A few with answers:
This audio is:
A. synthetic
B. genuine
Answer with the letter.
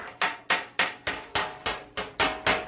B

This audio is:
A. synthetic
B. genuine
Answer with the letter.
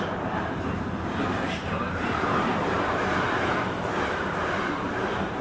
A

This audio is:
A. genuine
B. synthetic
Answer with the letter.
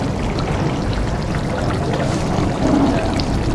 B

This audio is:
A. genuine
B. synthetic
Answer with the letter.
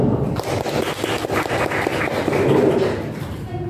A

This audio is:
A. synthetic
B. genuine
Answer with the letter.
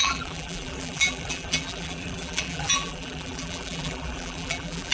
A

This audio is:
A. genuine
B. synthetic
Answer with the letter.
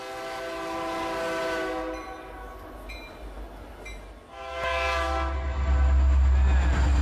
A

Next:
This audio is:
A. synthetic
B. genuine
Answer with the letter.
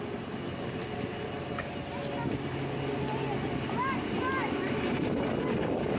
B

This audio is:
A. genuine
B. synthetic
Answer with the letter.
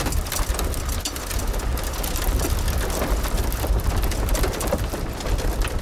A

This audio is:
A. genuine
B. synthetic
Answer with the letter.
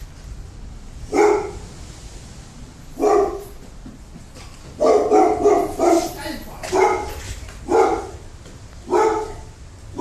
A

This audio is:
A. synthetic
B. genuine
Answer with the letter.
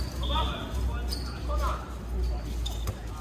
B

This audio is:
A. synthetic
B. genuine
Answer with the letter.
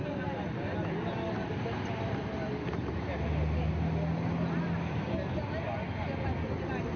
B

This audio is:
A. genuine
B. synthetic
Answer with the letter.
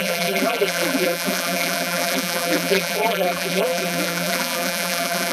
B